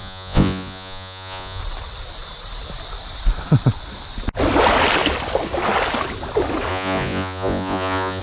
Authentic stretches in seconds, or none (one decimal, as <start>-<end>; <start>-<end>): 1.6-6.7